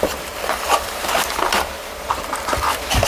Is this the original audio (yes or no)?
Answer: no